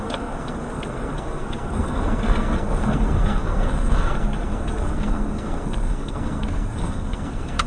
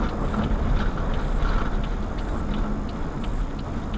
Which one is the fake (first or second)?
first